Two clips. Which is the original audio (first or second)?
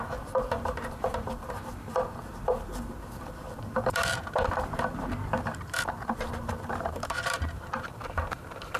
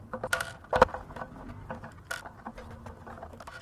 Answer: second